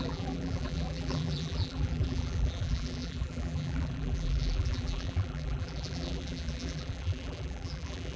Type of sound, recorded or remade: remade